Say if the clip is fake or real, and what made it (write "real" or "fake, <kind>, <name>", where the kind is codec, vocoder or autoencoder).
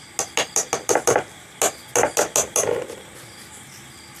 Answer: real